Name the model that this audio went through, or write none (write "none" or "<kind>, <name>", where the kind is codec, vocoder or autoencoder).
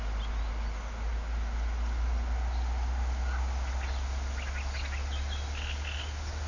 none